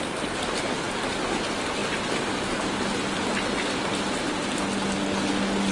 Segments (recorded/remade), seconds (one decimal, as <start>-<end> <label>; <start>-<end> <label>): 0.0-5.7 recorded

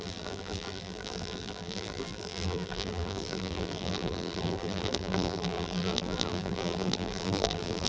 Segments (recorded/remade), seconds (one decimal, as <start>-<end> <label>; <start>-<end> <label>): 0.0-7.9 remade

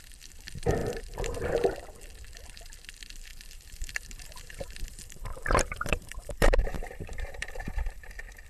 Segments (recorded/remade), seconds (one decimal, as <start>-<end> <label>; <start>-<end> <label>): 0.0-0.8 recorded; 0.8-1.5 remade; 1.5-3.3 recorded; 3.3-8.1 remade; 8.1-8.5 recorded

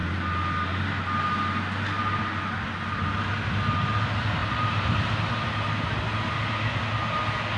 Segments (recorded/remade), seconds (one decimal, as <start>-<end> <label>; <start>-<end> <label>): 0.0-4.4 recorded; 4.4-5.1 remade; 5.1-7.6 recorded

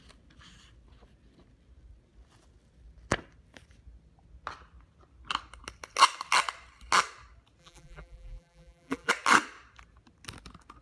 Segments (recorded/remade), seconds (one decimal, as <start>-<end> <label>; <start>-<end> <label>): 0.0-7.6 recorded; 7.6-9.1 remade; 9.1-10.8 recorded